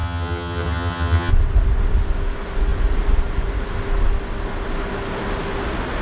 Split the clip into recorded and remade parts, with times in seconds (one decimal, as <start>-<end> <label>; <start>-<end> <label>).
0.0-1.3 remade; 1.3-6.0 recorded